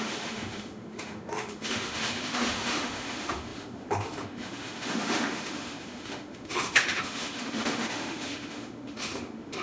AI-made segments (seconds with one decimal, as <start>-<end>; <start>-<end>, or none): 0.0-9.6